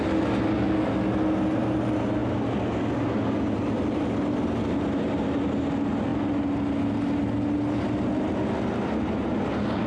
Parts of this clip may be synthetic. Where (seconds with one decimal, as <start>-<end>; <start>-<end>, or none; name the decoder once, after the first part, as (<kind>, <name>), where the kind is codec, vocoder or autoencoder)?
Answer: none